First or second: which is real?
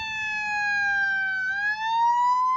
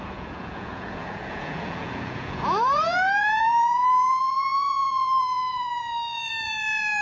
first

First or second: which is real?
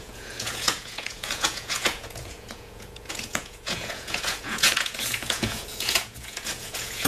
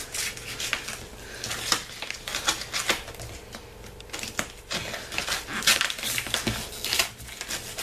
second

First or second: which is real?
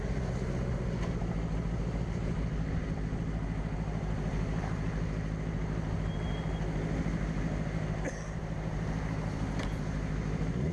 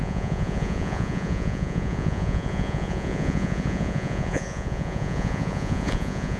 first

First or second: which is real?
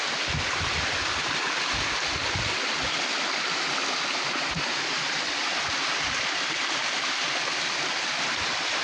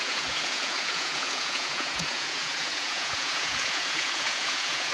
first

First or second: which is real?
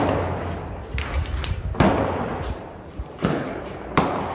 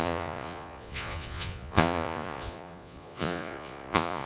first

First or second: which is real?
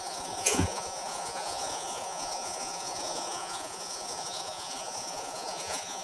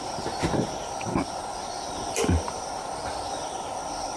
second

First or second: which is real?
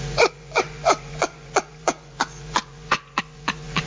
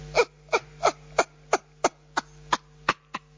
second